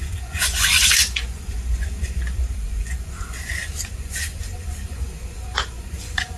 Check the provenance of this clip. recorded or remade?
remade